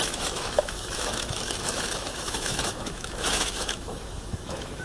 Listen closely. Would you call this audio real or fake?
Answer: fake